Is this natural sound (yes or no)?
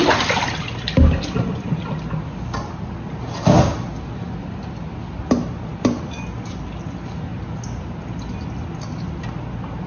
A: yes